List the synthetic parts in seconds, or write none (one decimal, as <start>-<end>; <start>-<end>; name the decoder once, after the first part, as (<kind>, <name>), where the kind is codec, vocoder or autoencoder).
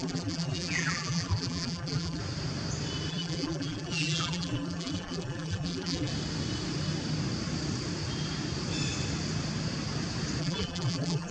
0.0-2.2 (vocoder, BigVGAN v2); 3.1-6.1; 10.4-11.3